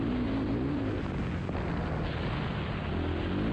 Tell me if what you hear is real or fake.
real